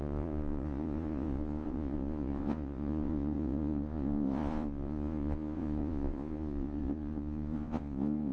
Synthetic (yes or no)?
yes